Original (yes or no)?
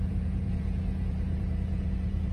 no